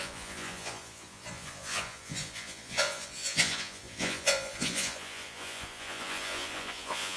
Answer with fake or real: fake